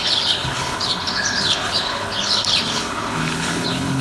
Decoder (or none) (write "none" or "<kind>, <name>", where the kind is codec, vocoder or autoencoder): codec, HILCodec